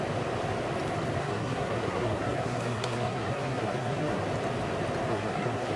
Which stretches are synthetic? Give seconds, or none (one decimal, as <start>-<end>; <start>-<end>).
1.2-4.2; 5.1-5.8